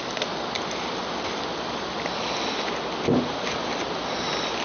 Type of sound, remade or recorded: recorded